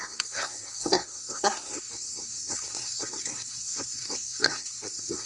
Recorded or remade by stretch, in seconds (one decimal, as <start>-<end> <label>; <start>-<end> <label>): 0.0-5.3 remade